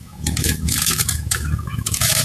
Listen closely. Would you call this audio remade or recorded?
remade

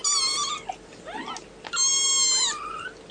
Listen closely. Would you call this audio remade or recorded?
recorded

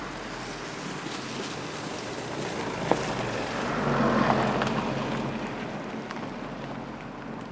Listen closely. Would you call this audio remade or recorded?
recorded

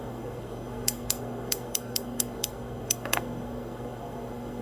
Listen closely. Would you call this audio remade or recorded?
remade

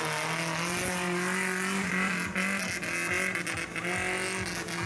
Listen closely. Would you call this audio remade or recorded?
recorded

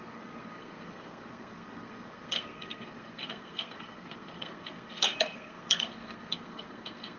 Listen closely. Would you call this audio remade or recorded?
remade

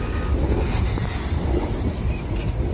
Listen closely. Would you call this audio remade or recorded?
recorded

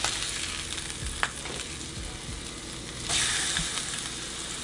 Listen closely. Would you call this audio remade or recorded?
recorded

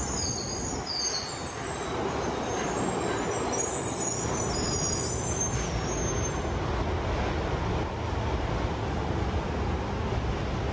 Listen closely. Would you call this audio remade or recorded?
recorded